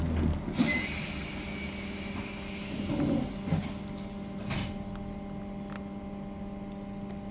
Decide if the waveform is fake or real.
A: real